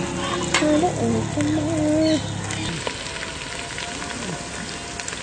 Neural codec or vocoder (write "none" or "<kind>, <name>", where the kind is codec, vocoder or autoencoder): none